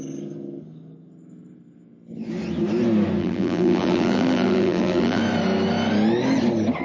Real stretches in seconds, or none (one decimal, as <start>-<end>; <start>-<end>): 0.0-3.2; 5.2-6.8